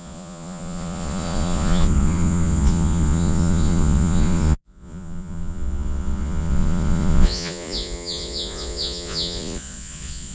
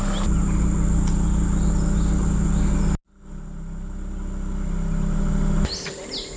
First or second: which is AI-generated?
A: first